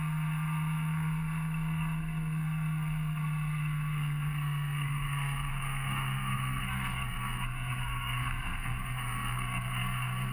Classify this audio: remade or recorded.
remade